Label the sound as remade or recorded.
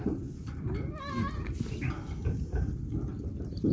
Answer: recorded